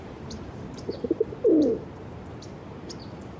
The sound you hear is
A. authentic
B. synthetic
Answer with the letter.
B